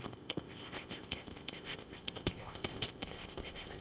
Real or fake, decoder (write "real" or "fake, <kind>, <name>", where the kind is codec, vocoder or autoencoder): fake, codec, ZipCodec